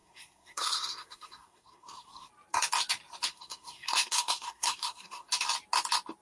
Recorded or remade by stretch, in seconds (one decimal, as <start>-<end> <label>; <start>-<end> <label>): 0.0-2.3 remade; 2.3-3.3 recorded; 3.3-5.3 remade; 5.3-6.2 recorded